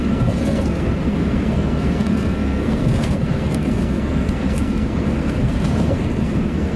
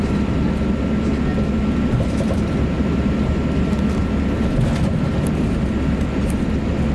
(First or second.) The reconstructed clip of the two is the first